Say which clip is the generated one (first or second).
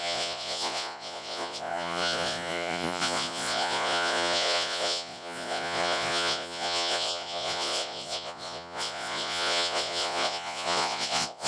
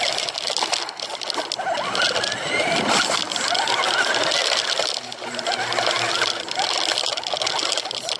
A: first